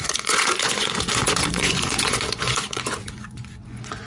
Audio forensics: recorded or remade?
remade